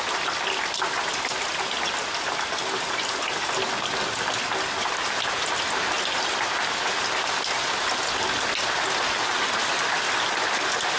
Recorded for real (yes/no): yes